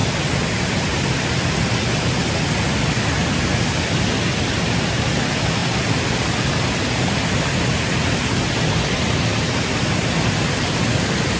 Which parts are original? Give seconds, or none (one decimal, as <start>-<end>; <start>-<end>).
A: 0.0-11.4